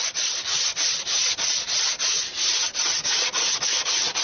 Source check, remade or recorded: recorded